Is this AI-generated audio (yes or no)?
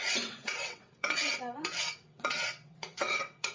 yes